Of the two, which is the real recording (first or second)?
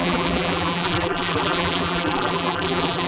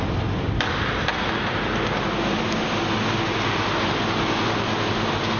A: second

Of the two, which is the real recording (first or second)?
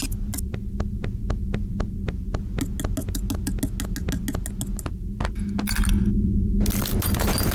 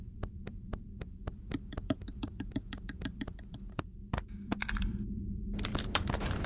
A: first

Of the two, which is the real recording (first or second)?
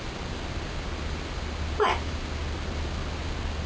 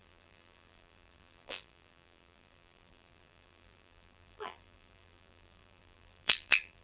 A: first